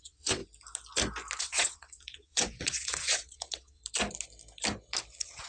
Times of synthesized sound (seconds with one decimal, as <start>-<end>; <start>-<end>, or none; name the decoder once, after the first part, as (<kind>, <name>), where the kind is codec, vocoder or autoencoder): 0.0-0.4 (vocoder, WaveNeXt); 1.4-3.8; 5.1-5.5